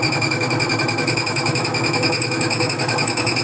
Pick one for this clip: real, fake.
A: fake